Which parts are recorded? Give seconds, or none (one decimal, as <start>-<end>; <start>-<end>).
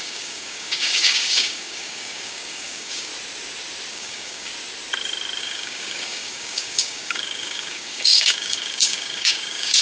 3.1-3.9; 4.5-5.4